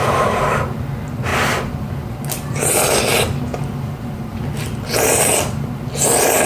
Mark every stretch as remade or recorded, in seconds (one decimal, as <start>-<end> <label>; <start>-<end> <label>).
0.0-6.5 recorded

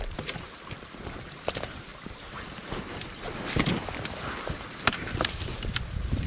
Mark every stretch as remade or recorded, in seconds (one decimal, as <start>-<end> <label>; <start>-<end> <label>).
0.0-1.9 remade; 1.9-4.8 recorded; 4.8-6.3 remade